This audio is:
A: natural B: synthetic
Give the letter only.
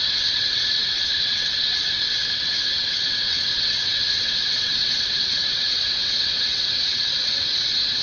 B